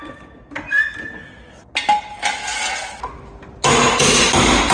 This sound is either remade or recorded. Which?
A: recorded